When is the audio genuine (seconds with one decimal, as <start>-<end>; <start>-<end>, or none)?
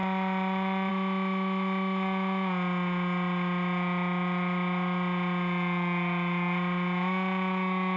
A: 0.0-8.0